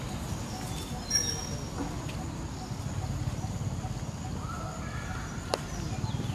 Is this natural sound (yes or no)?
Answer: yes